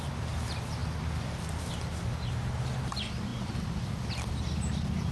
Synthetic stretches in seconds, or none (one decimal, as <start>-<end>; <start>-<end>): none